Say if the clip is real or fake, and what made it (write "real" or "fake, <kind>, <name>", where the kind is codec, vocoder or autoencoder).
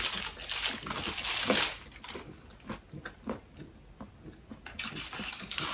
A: real